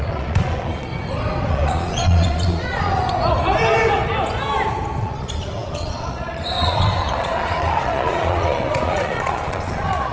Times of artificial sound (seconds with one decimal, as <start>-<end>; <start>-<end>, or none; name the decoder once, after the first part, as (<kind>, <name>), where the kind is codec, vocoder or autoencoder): 0.0-0.9 (vocoder, Vocos); 1.5-3.0; 5.0-10.1